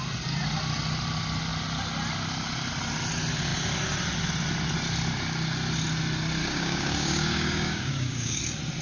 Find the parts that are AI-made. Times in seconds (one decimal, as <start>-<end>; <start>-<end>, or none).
6.4-8.4